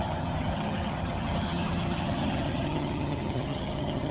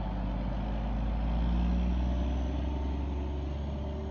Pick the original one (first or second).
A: second